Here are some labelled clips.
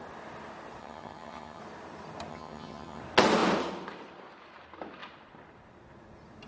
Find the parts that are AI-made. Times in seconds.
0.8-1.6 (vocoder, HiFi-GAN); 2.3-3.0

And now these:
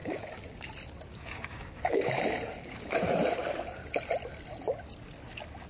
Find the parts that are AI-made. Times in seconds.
0.0-0.7 (codec, DAC); 1.1-3.2

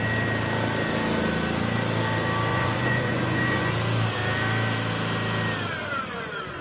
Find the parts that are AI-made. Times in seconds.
2.5-3.7 (vocoder, Vocos); 5.8-6.6

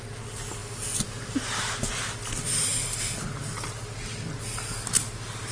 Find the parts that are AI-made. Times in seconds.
none

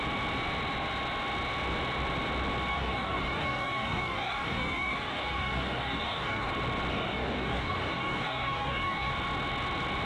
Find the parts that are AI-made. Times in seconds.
2.7-6.5 (codec, DAC); 6.9-9.1

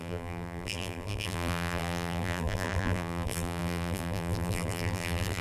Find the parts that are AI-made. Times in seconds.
0.0-5.4 (vocoder, BigVGAN v2)